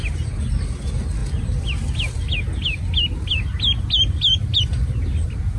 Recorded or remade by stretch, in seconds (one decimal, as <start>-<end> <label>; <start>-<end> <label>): 0.0-5.6 recorded

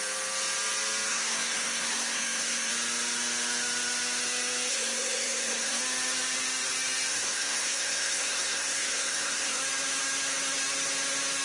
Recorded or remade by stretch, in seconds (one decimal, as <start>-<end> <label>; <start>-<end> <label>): 0.0-1.1 recorded; 1.1-2.7 remade; 2.7-4.7 recorded; 4.7-5.8 remade; 5.8-7.1 recorded; 7.1-9.6 remade; 9.6-11.4 recorded

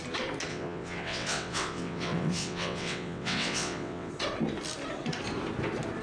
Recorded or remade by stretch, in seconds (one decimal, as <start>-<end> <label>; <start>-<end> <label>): 0.0-0.5 recorded; 0.5-4.1 remade; 4.1-6.0 recorded

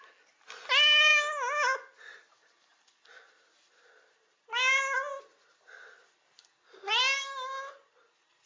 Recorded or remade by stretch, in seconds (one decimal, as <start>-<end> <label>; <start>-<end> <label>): 0.0-8.5 recorded

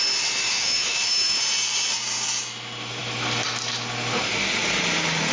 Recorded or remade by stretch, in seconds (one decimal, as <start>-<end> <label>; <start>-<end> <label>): 0.0-0.4 recorded; 0.4-1.4 remade; 1.4-5.3 recorded

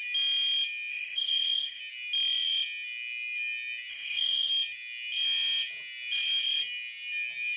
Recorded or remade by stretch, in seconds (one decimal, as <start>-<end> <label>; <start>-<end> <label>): 0.0-0.9 recorded; 0.9-1.8 remade; 1.8-3.9 recorded; 3.9-4.5 remade; 4.5-7.6 recorded